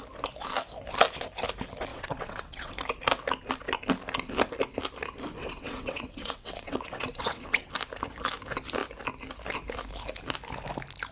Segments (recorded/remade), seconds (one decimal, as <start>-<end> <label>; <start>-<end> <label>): 0.0-1.9 recorded; 1.9-2.7 remade; 2.7-5.4 recorded; 5.4-7.7 remade; 7.7-11.1 recorded